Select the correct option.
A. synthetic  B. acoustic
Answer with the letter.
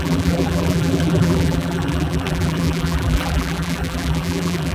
A